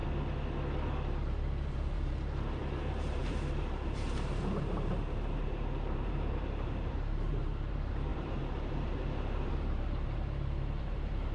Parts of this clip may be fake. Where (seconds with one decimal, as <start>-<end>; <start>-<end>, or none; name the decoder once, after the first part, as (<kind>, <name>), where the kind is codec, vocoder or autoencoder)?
1.7-11.3 (vocoder, BigVGAN v2)